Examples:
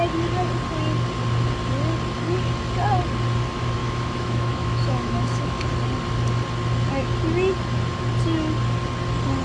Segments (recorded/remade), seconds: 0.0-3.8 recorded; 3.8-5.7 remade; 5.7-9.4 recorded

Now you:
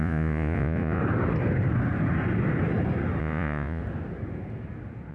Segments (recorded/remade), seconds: 0.0-1.0 remade; 1.0-3.2 recorded; 3.2-3.8 remade; 3.8-5.1 recorded